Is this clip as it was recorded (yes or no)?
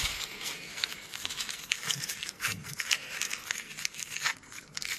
no